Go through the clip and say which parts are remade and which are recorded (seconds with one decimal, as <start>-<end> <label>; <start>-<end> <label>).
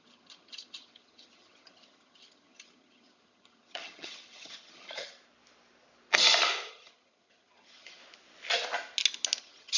0.0-5.2 remade; 5.2-6.7 recorded; 6.7-8.0 remade; 8.0-9.4 recorded; 9.4-9.8 remade